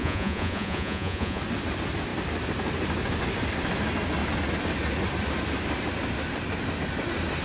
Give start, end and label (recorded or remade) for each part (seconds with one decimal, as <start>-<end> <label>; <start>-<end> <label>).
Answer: 0.0-1.4 remade; 1.4-7.4 recorded

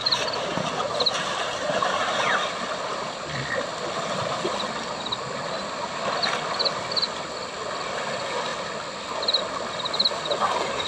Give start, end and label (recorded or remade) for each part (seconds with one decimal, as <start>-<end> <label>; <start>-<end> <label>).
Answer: 0.0-3.6 remade; 3.6-10.9 recorded

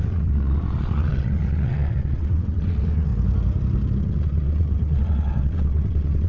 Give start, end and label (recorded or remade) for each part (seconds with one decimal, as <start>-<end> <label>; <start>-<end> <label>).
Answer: 0.0-3.1 remade; 3.1-4.0 recorded; 4.0-6.3 remade

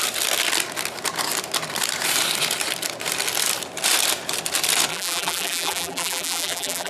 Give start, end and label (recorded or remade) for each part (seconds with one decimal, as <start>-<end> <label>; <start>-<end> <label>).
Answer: 0.0-4.9 recorded; 4.9-6.9 remade

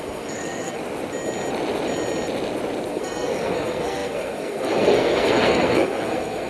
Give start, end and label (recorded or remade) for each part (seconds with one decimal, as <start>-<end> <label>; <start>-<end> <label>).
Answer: 0.0-0.8 remade; 0.8-2.9 recorded; 2.9-6.5 remade

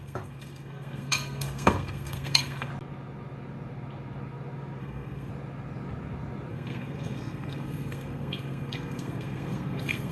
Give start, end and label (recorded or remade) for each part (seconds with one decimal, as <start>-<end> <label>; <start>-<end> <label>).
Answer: 0.0-2.7 remade; 2.7-4.8 recorded; 4.8-5.3 remade; 5.3-6.5 recorded; 6.5-10.1 remade

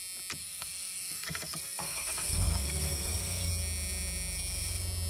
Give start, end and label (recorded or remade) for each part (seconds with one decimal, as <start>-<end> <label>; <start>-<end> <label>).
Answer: 0.0-0.4 recorded; 0.4-3.5 remade; 3.5-5.1 recorded

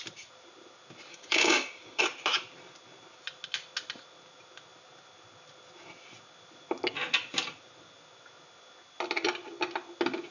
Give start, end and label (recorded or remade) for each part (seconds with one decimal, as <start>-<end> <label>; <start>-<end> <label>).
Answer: 0.0-1.1 recorded; 1.1-2.0 remade; 2.0-10.3 recorded